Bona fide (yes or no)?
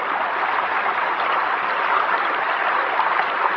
yes